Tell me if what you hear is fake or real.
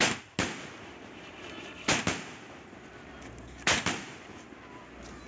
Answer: real